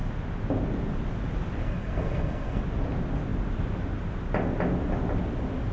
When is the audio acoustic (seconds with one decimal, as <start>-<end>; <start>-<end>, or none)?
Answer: 0.0-1.6; 2.6-5.7